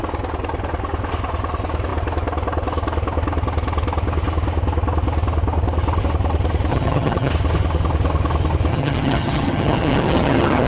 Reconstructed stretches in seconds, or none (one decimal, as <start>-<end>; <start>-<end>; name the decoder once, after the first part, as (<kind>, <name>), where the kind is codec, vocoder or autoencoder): 6.7-7.3 (vocoder, HiFi-GAN); 8.7-10.7